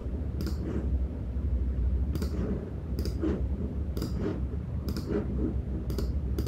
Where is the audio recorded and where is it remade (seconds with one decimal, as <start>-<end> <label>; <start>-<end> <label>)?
0.0-4.3 remade; 4.3-6.0 recorded; 6.0-6.5 remade